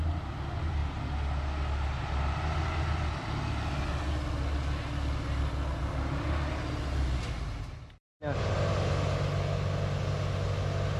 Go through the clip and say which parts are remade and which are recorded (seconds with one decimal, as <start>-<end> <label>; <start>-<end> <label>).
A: 0.0-11.0 recorded